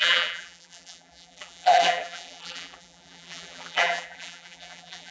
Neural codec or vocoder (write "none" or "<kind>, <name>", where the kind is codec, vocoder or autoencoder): vocoder, BigVGAN v2